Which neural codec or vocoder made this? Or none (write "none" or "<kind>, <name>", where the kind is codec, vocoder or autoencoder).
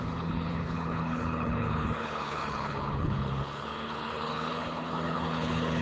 codec, HILCodec